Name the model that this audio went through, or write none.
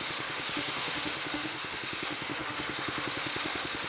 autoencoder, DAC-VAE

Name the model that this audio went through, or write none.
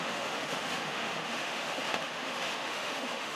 autoencoder, DAC-VAE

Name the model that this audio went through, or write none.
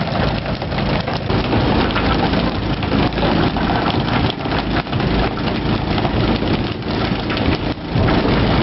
none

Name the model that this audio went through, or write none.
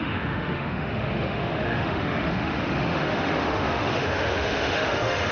autoencoder, DAC-VAE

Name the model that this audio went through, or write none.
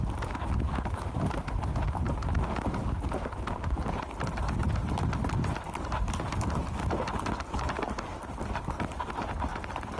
none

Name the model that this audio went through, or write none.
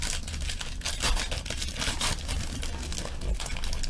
none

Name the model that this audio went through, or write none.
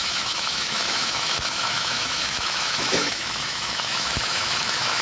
autoencoder, DAC-VAE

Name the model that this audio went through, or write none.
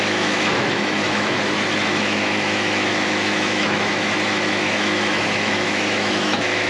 autoencoder, DAC-VAE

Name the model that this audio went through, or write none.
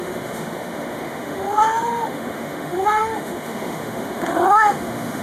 autoencoder, DAC-VAE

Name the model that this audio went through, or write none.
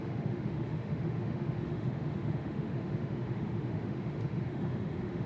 autoencoder, DAC-VAE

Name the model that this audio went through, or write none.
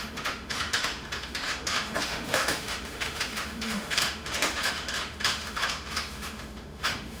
autoencoder, DAC-VAE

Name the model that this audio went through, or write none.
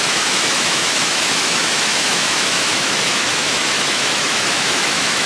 autoencoder, DAC-VAE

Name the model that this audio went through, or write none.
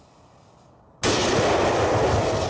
none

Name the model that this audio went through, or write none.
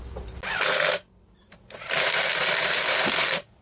none